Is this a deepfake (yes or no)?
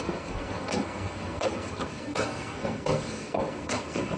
yes